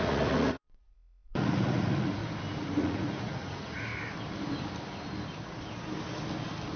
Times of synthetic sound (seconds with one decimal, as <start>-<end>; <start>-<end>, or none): 0.0-2.2; 2.8-3.9